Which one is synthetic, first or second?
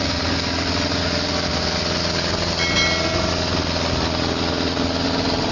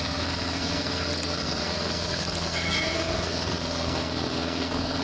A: second